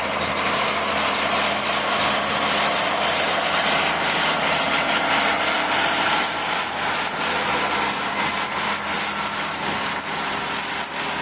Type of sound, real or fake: real